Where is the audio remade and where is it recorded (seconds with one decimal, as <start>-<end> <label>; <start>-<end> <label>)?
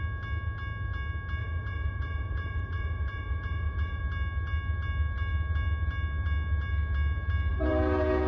0.0-1.4 recorded; 1.4-4.0 remade; 4.0-7.5 recorded; 7.5-8.3 remade